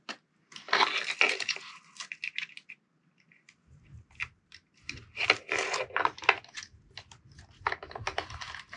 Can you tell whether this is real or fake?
real